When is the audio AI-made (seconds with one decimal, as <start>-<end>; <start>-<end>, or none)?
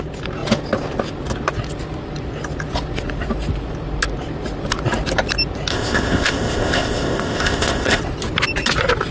5.7-8.0